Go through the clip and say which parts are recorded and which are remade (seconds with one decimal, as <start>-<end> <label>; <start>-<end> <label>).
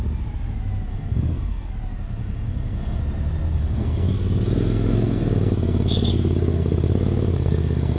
0.0-0.9 recorded; 0.9-1.7 remade; 1.7-2.2 recorded; 2.2-3.0 remade; 3.0-3.5 recorded; 3.5-8.0 remade